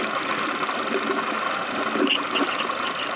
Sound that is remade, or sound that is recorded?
recorded